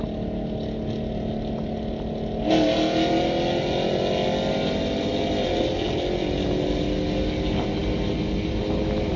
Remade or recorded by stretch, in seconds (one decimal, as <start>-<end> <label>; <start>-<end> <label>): 0.0-9.2 recorded

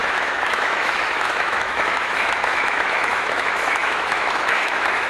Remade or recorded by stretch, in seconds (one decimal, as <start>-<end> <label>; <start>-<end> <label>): 0.0-5.1 remade

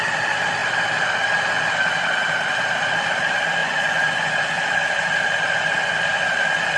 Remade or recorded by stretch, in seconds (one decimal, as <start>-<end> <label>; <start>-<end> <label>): 0.0-3.6 recorded; 3.6-4.3 remade; 4.3-6.8 recorded

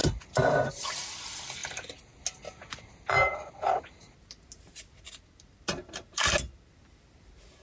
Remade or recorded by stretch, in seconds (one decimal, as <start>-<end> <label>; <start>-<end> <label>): 0.0-7.6 recorded